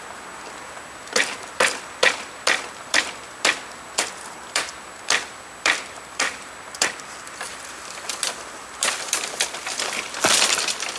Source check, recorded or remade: remade